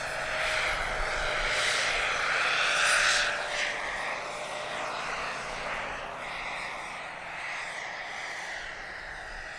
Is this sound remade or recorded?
recorded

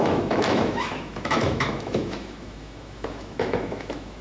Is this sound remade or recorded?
remade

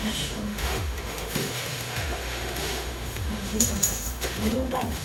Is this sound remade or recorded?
remade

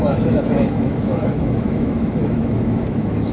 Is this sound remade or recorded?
remade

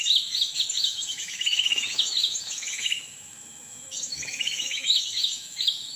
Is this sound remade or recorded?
remade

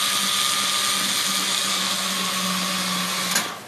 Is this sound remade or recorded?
recorded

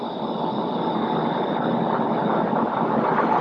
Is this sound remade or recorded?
recorded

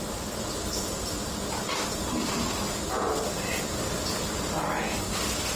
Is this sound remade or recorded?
recorded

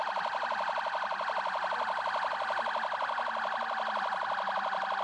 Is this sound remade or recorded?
recorded